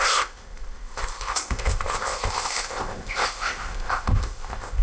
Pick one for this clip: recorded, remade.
remade